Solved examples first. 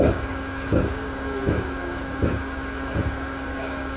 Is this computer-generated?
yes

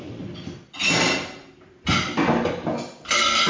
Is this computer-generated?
no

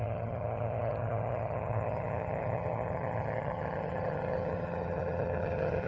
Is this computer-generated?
yes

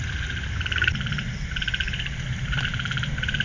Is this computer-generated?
no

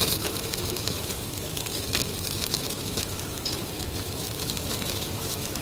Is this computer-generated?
yes